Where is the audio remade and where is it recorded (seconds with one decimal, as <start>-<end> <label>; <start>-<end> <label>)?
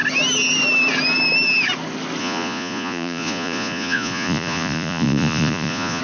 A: 0.0-2.2 recorded; 2.2-6.0 remade